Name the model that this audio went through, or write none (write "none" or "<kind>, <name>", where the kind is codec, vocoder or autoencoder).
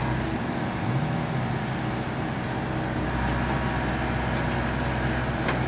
none